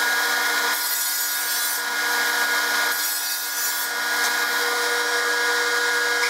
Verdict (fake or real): real